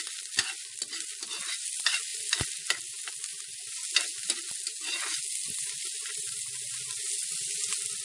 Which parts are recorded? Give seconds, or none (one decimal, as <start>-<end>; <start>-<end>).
0.0-8.0